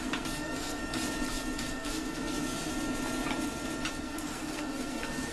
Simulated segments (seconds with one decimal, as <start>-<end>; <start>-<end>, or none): 0.0-0.8; 1.6-2.7; 4.0-5.3